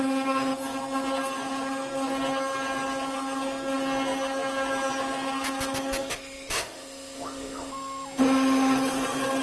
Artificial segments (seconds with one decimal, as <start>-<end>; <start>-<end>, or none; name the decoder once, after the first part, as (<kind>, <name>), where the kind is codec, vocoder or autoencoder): 6.0-7.7 (autoencoder, DAC-VAE)